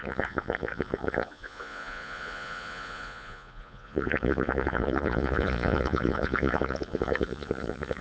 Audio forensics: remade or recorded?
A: remade